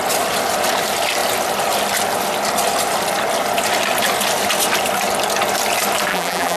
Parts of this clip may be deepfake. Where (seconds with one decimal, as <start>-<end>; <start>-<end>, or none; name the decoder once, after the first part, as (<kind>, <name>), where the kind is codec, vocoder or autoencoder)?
6.1-6.6 (vocoder, BigVGAN v2)